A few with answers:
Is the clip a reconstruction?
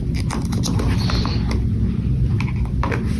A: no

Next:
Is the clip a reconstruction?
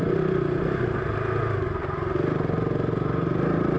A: no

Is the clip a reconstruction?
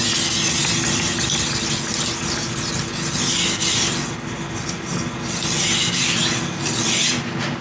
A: no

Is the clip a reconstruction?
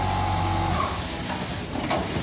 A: no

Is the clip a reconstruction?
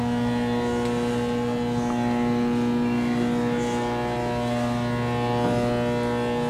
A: no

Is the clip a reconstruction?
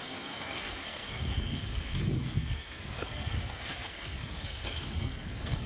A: yes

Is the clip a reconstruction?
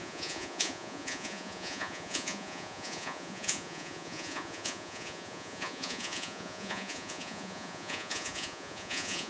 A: yes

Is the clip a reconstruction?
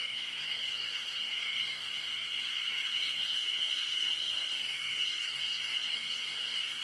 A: yes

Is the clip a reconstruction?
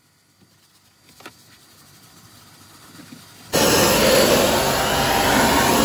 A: no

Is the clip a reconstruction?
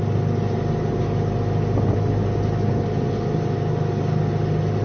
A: no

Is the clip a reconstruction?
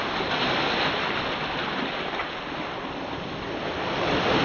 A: no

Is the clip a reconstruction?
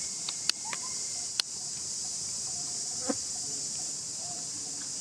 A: yes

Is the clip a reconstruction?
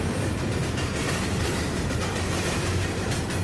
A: yes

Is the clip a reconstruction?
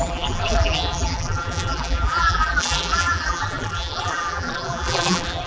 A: yes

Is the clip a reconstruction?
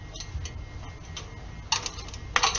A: no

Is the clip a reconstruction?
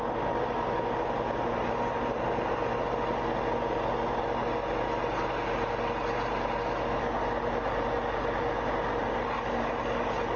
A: no